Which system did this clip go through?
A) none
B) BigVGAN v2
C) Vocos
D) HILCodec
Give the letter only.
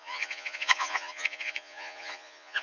C